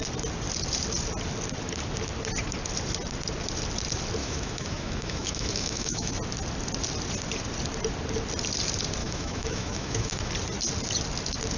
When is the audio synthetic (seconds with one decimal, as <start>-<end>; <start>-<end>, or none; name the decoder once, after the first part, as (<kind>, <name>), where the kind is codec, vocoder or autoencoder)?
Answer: 4.2-6.1 (autoencoder, DAC-VAE); 9.0-10.3

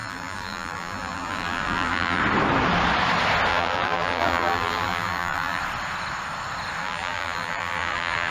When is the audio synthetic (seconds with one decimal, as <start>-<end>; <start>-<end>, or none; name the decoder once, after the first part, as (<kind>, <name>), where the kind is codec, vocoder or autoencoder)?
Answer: 0.0-2.2 (vocoder, BigVGAN v2); 3.5-5.6; 6.8-8.3

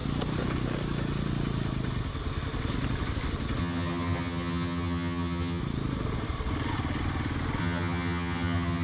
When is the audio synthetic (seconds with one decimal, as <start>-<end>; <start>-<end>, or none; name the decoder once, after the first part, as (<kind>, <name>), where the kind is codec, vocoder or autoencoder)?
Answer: 3.6-5.6 (vocoder, HiFi-GAN); 7.6-8.8

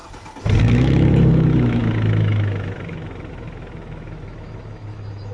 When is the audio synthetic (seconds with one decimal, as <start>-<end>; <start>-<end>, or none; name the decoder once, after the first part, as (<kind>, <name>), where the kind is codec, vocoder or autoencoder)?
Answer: 0.6-5.3 (autoencoder, DAC-VAE)